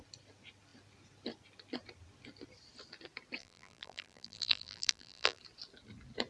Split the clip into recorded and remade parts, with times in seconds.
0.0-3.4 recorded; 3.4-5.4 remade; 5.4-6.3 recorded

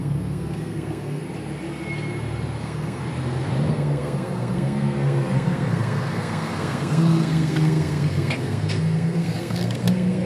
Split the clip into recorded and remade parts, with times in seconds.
0.0-1.2 remade; 1.2-2.6 recorded; 2.6-3.0 remade; 3.0-3.7 recorded; 3.7-10.3 remade

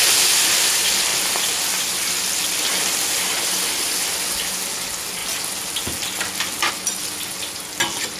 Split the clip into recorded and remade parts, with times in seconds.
0.0-8.2 recorded

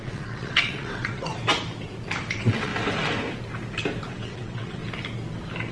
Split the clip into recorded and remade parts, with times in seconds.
0.0-1.3 remade; 1.3-2.3 recorded; 2.3-2.7 remade; 2.7-4.1 recorded; 4.1-4.8 remade; 4.8-5.7 recorded

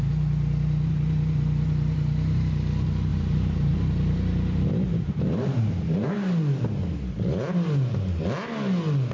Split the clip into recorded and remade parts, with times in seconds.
0.0-3.1 recorded; 3.1-6.1 remade; 6.1-9.1 recorded